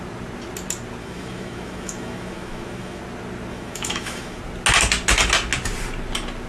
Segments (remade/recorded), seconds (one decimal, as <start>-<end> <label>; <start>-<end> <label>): 0.0-1.0 recorded; 1.0-3.0 remade; 3.0-3.5 recorded; 3.5-4.4 remade; 4.4-6.5 recorded